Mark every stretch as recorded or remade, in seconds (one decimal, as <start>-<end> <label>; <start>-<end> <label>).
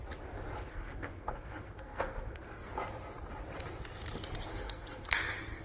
0.0-0.7 recorded; 0.7-2.7 remade; 2.7-4.5 recorded; 4.5-5.6 remade